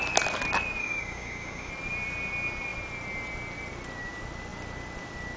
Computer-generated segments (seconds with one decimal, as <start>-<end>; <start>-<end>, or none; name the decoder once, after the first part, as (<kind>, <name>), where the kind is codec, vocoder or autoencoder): 0.8-1.7 (codec, DAC)

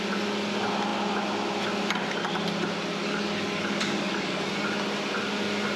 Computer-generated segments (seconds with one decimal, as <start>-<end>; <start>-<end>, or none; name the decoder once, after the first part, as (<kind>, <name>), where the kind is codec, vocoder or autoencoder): 3.0-4.5 (codec, DAC)

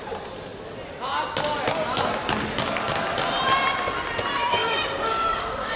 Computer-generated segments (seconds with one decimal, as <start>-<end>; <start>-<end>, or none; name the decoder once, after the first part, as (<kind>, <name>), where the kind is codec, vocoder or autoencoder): 4.6-5.8 (codec, DAC)

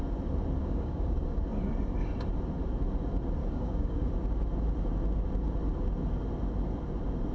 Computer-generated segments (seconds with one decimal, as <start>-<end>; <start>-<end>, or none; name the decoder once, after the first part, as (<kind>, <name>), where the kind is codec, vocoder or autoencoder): 0.6-1.4 (codec, DAC); 3.4-4.1